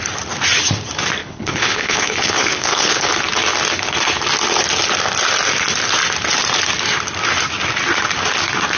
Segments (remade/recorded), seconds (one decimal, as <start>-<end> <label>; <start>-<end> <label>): 0.0-1.2 recorded; 1.2-3.1 remade; 3.1-8.8 recorded